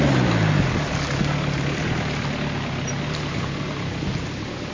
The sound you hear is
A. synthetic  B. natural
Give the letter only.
B